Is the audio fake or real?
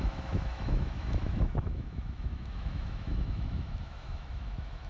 fake